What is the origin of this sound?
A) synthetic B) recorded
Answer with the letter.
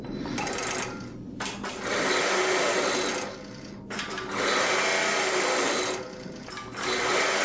B